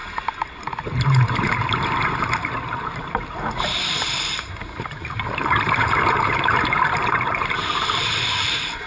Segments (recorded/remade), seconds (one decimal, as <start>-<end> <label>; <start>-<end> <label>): 0.0-0.6 recorded; 0.6-8.9 remade